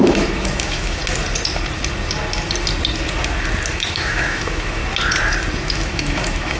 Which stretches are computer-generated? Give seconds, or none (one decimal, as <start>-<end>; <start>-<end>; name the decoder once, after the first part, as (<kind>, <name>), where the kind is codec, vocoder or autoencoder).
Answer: 0.0-1.0 (autoencoder, DAC-VAE); 3.7-4.8; 5.6-6.6

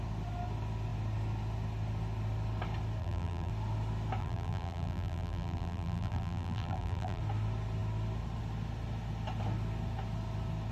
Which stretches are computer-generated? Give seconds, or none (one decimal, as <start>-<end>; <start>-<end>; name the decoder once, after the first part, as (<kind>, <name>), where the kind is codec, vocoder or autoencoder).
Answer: 3.0-3.5 (vocoder, BigVGAN v2); 4.2-7.2